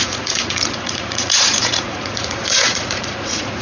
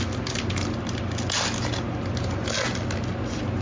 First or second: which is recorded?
second